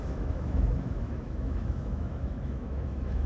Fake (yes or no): yes